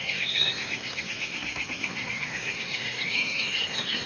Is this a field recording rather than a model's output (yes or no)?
no